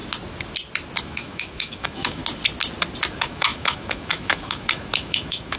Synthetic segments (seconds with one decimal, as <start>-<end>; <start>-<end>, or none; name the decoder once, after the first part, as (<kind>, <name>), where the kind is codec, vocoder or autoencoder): 1.0-2.2 (autoencoder, DAC-VAE); 3.1-5.6